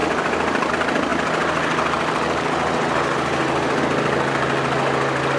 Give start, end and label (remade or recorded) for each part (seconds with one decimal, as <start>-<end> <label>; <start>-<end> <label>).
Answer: 0.0-5.4 recorded